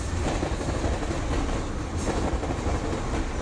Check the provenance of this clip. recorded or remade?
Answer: recorded